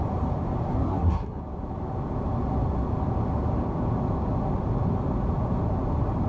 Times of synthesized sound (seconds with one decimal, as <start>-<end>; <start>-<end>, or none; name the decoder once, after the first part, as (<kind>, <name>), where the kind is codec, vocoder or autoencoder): 0.7-1.4 (codec, SNAC)